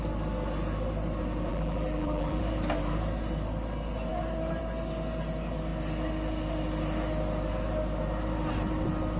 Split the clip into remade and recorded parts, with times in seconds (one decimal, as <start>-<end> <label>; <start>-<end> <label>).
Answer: 0.0-1.5 recorded; 1.5-2.4 remade; 2.4-9.2 recorded

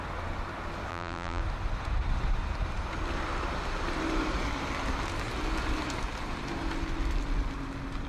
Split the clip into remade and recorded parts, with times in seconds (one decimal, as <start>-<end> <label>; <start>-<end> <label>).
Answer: 0.0-0.9 recorded; 0.9-1.4 remade; 1.4-8.1 recorded

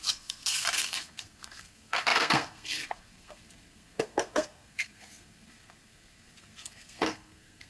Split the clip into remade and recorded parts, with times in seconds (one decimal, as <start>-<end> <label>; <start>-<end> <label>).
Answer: 0.0-7.7 remade

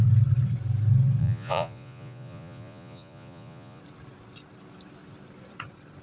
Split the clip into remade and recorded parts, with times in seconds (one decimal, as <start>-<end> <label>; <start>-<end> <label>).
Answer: 0.0-1.2 recorded; 1.2-3.8 remade; 3.8-6.0 recorded

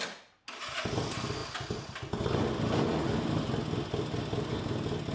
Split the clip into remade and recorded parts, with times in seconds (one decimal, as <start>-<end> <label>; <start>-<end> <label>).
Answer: 0.0-5.1 recorded

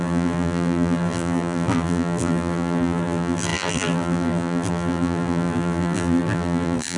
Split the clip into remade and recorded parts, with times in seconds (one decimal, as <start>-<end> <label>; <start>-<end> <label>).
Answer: 0.0-7.0 remade

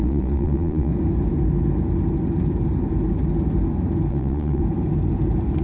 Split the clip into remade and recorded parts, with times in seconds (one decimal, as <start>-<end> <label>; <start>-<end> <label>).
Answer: 0.0-0.9 remade; 0.9-4.1 recorded; 4.1-4.6 remade; 4.6-5.6 recorded